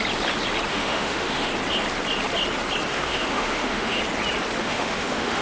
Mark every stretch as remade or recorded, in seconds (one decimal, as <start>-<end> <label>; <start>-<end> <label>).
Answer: 0.0-0.7 recorded; 0.7-1.5 remade; 1.5-2.9 recorded; 2.9-4.0 remade; 4.0-4.6 recorded; 4.6-5.4 remade